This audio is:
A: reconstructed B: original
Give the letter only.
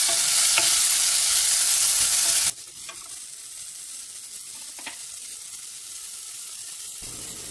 B